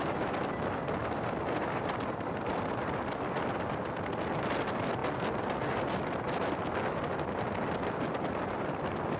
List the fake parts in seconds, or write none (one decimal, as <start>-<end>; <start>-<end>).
none